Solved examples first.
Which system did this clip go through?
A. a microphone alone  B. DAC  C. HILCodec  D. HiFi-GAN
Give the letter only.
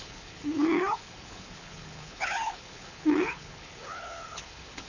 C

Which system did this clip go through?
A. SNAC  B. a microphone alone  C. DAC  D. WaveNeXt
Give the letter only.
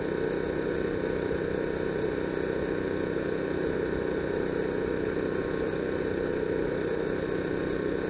B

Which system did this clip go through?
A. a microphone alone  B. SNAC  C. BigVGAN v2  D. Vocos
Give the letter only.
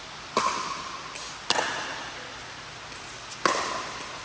A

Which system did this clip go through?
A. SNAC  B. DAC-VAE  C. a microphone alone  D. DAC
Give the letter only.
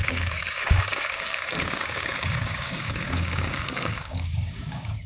D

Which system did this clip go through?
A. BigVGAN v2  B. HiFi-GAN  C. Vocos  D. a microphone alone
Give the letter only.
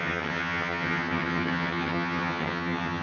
B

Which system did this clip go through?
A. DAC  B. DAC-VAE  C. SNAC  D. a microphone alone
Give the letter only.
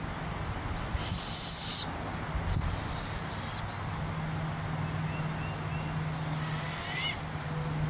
D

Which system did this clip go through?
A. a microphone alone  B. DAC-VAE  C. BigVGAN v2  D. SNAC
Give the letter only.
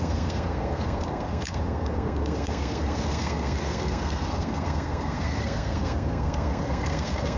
D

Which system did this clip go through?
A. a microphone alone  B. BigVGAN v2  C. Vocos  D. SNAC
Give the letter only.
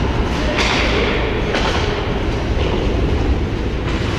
A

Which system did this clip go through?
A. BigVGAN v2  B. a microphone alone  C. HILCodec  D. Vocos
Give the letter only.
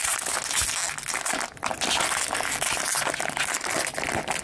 B